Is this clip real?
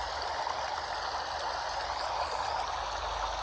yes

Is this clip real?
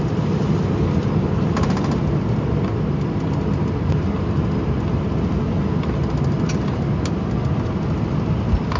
yes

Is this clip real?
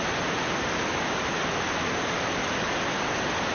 yes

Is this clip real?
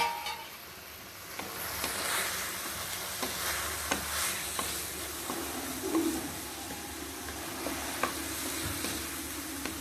yes